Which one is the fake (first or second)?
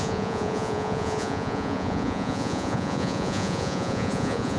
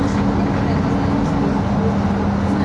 first